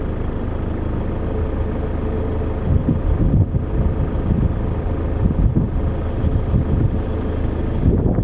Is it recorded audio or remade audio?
recorded